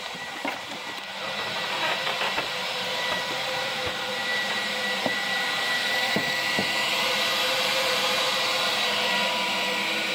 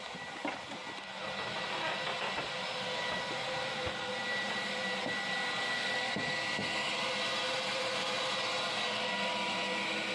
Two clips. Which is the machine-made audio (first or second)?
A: first